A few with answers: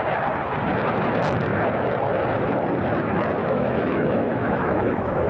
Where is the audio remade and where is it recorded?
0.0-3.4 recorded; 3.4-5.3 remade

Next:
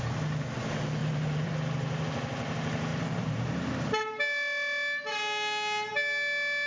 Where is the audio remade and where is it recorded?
0.0-1.0 recorded; 1.0-1.5 remade; 1.5-2.9 recorded; 2.9-3.5 remade; 3.5-6.7 recorded

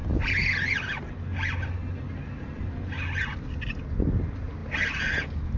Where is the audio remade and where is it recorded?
0.0-5.6 recorded

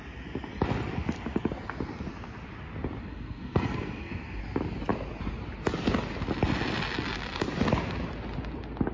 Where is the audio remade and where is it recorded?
0.0-3.0 recorded; 3.0-4.4 remade; 4.4-8.9 recorded

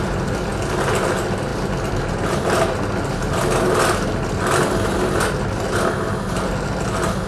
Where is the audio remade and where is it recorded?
0.0-7.3 recorded

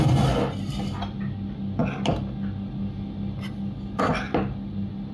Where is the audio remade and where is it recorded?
0.0-5.1 recorded